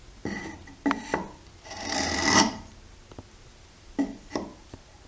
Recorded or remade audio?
remade